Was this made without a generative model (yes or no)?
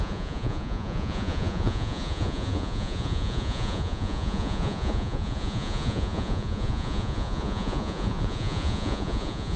no